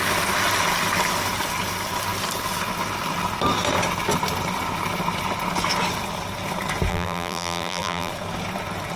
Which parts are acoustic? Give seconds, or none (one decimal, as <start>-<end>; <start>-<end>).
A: 0.0-6.9; 8.1-9.0